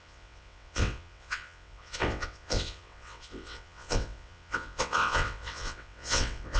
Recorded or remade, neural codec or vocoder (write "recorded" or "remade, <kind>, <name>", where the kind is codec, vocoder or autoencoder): remade, vocoder, WaveNeXt